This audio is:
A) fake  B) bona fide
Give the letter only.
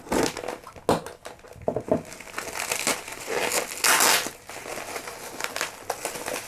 B